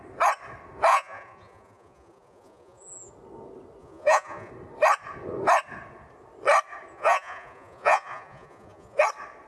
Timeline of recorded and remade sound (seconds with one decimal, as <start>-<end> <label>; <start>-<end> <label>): 0.0-0.9 recorded; 0.9-3.1 remade; 3.1-3.8 recorded; 3.8-4.5 remade; 4.5-6.9 recorded; 6.9-9.0 remade; 9.0-9.5 recorded